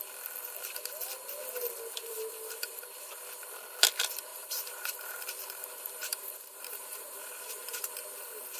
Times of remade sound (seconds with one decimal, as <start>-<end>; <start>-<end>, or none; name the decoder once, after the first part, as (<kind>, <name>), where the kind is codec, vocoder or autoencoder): 2.1-2.8 (vocoder, BigVGAN v2); 4.3-7.9